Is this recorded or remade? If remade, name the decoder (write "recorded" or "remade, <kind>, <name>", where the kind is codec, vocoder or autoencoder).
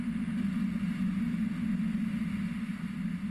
recorded